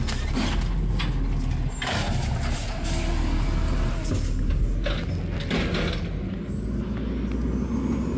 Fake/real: real